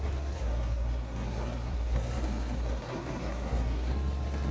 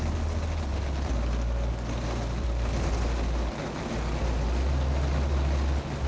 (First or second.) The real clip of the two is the second